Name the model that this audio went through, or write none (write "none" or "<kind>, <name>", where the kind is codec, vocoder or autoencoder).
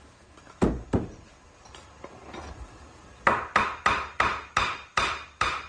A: none